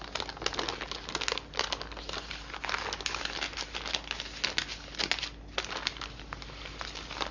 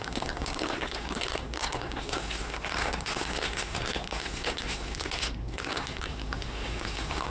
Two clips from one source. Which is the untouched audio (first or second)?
first